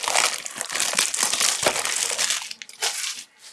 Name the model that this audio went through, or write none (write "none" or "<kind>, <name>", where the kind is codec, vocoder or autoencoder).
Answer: none